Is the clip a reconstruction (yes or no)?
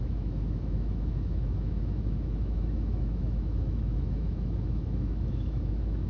yes